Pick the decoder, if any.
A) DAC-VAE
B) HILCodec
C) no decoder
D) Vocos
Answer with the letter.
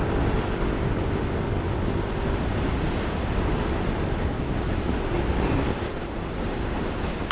C